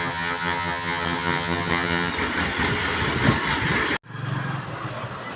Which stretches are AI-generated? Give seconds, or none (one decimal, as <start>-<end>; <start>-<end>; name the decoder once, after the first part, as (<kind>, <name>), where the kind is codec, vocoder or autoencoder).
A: 0.0-2.1 (vocoder, HiFi-GAN)